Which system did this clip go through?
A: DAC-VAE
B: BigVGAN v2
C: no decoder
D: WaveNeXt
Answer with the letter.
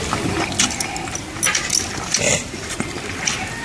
C